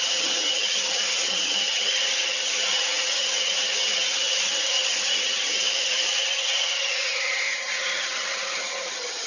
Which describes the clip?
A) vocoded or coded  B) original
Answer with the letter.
A